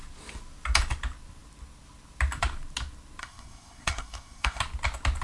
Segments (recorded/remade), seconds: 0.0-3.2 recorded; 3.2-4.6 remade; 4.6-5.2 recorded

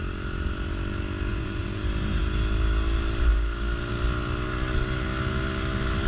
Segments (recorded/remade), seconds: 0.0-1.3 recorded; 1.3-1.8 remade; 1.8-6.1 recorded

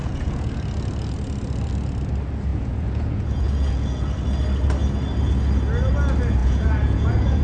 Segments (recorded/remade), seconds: 0.0-0.5 remade; 0.5-2.5 recorded; 2.5-4.1 remade; 4.1-6.4 recorded; 6.4-7.4 remade